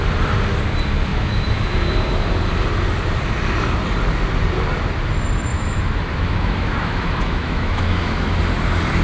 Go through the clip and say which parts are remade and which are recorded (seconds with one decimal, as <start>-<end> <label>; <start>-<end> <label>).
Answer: 0.0-1.1 recorded; 1.1-2.3 remade; 2.3-5.5 recorded; 5.5-8.4 remade; 8.4-9.0 recorded

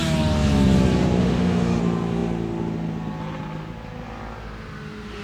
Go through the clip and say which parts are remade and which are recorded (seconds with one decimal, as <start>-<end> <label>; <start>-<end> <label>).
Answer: 0.0-1.2 recorded; 1.2-1.8 remade; 1.8-5.2 recorded

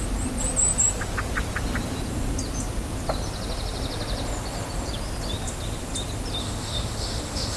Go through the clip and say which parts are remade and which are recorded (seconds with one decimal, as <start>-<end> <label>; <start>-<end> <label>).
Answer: 0.0-6.4 recorded; 6.4-7.6 remade

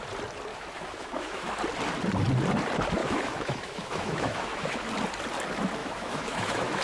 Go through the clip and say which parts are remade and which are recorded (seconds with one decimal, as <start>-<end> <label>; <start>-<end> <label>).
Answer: 0.0-0.5 recorded; 0.5-1.5 remade; 1.5-3.0 recorded; 3.0-4.9 remade; 4.9-5.8 recorded; 5.8-6.8 remade

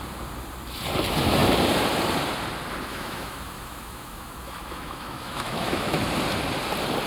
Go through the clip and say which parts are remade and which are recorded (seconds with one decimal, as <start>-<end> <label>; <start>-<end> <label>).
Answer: 0.0-2.9 recorded; 2.9-6.0 remade; 6.0-7.1 recorded

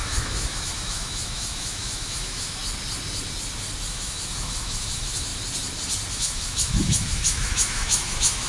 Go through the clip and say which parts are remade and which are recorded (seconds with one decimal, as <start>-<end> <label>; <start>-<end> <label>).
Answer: 0.0-2.6 remade; 2.6-3.9 recorded; 3.9-5.3 remade; 5.3-6.1 recorded; 6.1-8.5 remade

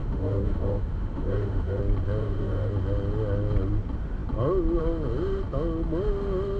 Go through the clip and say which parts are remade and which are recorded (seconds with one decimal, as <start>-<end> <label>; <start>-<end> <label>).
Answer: 0.0-1.8 remade; 1.8-2.2 recorded; 2.2-2.7 remade; 2.7-6.6 recorded

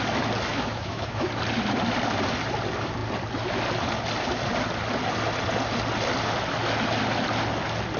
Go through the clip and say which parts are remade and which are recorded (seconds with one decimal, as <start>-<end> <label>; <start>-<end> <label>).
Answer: 0.0-0.5 recorded; 0.5-1.3 remade; 1.3-8.0 recorded